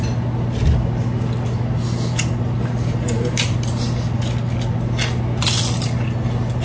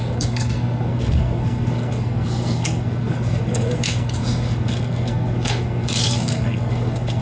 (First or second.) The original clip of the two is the first